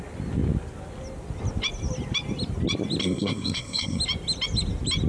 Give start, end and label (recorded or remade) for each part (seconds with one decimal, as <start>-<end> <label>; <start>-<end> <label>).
0.0-3.0 recorded; 3.0-4.0 remade; 4.0-5.1 recorded